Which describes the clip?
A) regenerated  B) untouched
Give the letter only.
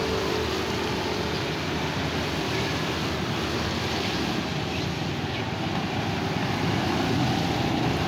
B